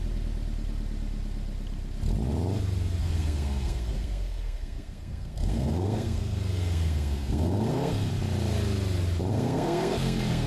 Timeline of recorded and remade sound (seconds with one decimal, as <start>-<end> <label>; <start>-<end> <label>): 0.0-3.0 recorded; 3.0-8.1 remade; 8.1-9.3 recorded; 9.3-10.5 remade